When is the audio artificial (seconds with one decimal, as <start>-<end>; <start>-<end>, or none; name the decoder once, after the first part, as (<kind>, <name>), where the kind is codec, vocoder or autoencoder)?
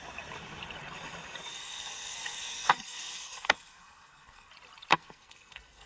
1.5-4.5 (codec, SNAC); 4.9-5.9